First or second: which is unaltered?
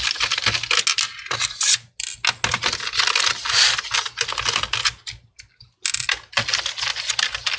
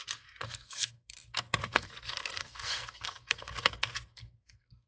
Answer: first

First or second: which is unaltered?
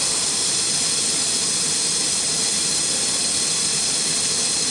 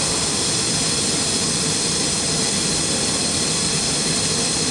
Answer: second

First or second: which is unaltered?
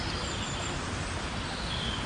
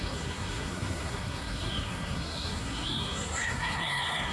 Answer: first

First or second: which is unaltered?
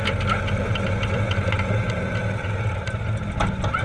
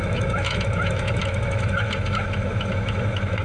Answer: first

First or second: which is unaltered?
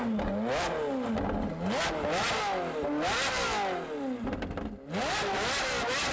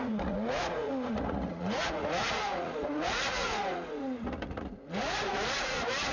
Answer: first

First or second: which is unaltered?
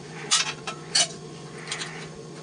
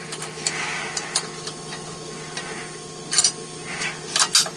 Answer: second